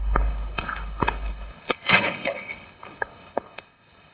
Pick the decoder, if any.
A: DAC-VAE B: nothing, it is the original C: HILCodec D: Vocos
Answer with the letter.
C